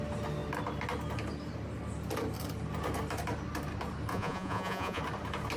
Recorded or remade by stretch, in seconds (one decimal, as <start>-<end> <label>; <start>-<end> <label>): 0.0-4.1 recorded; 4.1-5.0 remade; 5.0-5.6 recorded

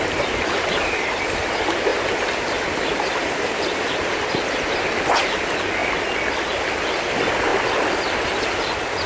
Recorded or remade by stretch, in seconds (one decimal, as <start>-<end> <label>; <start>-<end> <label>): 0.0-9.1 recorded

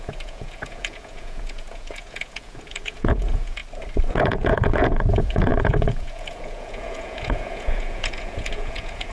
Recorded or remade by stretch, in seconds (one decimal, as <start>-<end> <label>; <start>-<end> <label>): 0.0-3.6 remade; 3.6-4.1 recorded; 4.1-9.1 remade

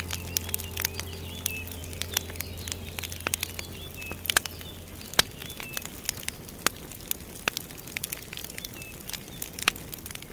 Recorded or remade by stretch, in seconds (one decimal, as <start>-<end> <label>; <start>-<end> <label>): 0.0-10.3 recorded